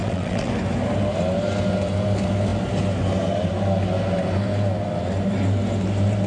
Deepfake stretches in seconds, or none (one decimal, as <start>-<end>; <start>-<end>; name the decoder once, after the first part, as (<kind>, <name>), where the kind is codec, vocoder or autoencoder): 0.0-0.5 (vocoder, WaveNeXt)